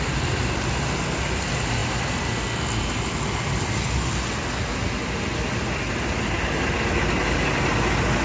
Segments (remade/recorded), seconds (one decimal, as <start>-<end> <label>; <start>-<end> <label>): 0.0-8.2 recorded